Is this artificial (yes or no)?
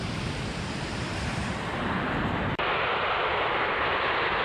yes